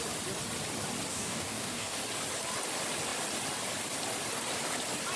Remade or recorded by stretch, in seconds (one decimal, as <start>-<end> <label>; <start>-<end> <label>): 0.0-1.1 recorded; 1.1-2.0 remade; 2.0-5.2 recorded